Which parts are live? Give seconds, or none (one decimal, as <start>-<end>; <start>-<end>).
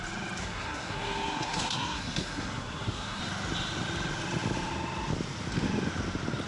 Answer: 0.0-0.4; 3.2-6.5